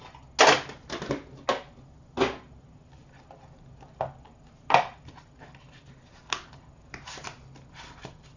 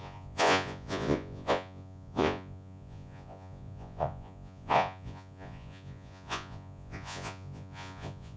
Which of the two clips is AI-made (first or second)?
second